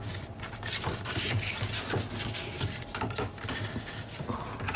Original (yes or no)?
yes